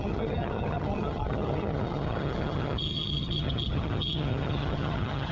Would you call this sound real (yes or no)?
no